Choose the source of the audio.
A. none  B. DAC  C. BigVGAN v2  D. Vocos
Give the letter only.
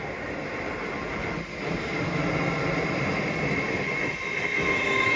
A